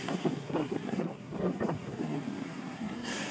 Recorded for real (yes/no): no